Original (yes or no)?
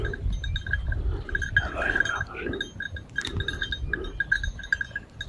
yes